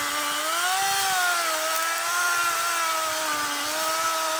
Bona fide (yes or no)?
yes